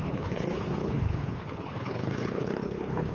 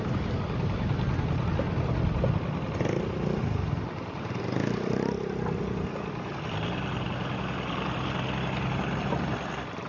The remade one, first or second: first